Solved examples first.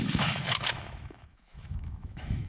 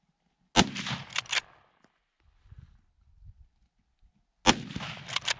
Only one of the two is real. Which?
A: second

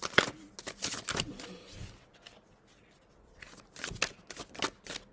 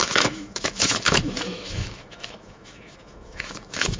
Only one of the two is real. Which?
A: first